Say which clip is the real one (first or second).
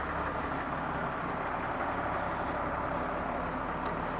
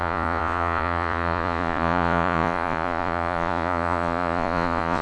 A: first